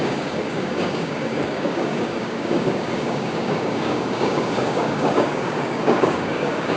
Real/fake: fake